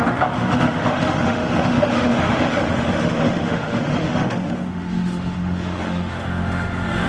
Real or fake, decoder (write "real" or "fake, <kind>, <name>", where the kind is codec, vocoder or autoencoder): fake, autoencoder, DAC-VAE